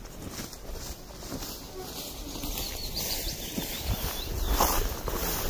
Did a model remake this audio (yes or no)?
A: no